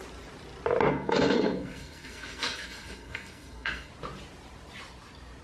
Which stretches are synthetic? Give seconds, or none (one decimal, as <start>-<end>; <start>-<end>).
0.9-3.9